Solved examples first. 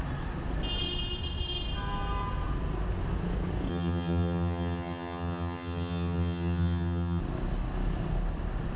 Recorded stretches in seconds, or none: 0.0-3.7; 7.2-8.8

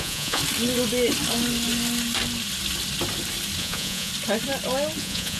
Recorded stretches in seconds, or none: 0.4-3.6; 4.1-5.0

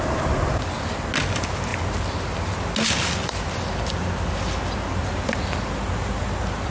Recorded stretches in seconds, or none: 0.0-6.7

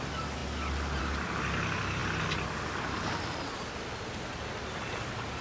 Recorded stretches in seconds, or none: 0.0-5.4

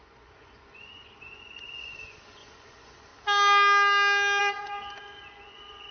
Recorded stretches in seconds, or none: 3.1-4.4

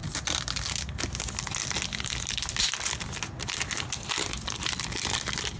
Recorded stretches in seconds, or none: 0.0-5.6